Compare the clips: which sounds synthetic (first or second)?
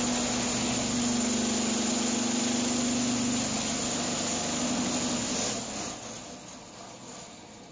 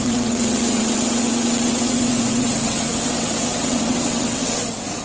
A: second